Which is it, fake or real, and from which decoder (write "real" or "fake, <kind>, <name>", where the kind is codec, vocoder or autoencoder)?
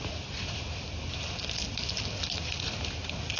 real